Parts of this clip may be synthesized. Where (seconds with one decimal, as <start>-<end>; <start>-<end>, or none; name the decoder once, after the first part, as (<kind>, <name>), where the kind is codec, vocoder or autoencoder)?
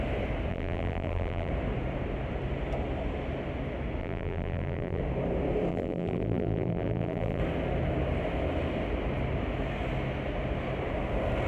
0.5-1.5 (vocoder, BigVGAN v2); 4.0-5.0; 5.7-7.4